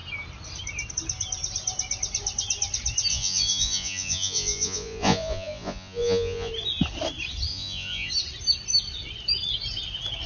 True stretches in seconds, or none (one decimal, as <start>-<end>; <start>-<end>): 0.0-3.1; 6.5-7.5; 8.1-10.3